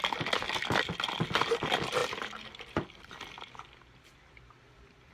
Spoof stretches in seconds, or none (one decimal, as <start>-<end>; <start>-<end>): 2.0-5.1